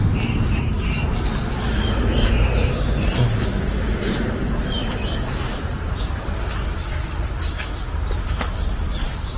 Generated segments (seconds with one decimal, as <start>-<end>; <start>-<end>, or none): 5.5-6.2